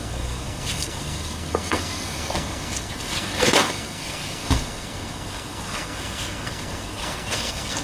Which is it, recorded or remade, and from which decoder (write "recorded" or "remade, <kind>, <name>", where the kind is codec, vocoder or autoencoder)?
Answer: remade, codec, SNAC